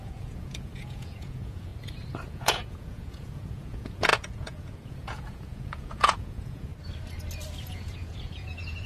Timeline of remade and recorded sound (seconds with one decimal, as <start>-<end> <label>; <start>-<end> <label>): 0.0-1.7 remade; 1.7-2.3 recorded; 2.3-6.7 remade; 6.7-7.7 recorded; 7.7-8.9 remade